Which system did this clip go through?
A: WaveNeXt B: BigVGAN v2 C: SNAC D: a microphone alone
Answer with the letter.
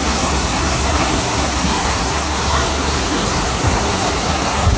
C